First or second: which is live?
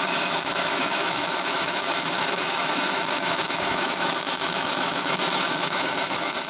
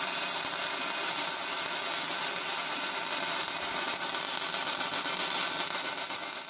second